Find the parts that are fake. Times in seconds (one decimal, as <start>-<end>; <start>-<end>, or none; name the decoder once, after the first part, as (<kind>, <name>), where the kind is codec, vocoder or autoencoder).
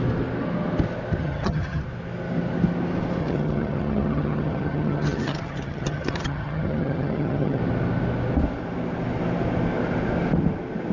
1.2-1.8 (vocoder, HiFi-GAN); 3.2-7.6